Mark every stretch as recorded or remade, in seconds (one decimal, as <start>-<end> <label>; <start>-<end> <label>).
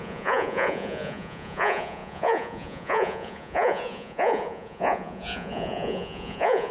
0.0-6.7 remade